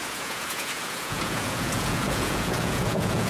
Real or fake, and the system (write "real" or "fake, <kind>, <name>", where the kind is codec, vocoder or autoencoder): fake, vocoder, Vocos